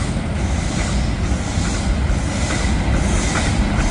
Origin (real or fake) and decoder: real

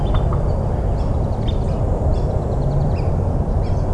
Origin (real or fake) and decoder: real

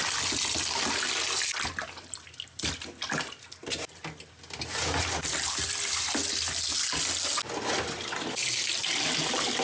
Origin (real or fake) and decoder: real